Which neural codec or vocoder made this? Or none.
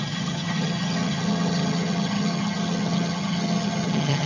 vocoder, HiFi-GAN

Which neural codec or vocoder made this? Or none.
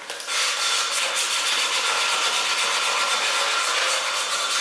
none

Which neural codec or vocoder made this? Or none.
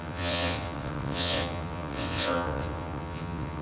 vocoder, WaveNeXt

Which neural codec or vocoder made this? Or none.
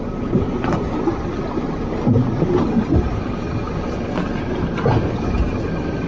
none